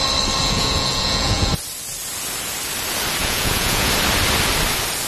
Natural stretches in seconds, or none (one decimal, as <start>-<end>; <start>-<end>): 0.0-0.4; 1.5-3.2; 3.9-5.1